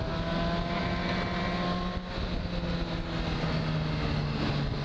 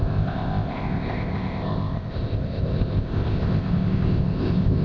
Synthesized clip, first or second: second